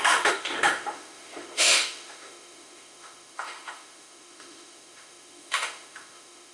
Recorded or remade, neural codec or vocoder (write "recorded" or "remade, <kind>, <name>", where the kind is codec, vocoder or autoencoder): remade, autoencoder, DAC-VAE